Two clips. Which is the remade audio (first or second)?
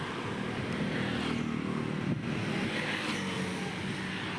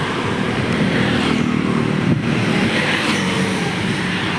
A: second